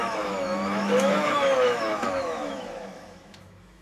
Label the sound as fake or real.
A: fake